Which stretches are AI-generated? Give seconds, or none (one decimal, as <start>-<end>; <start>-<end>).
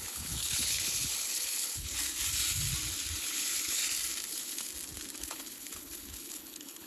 0.0-1.9; 3.2-3.8; 4.3-4.7; 5.2-6.9